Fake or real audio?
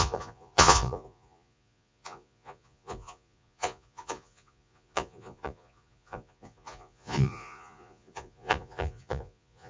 fake